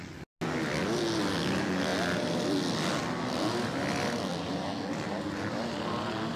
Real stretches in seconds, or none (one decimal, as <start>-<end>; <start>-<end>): 0.0-6.4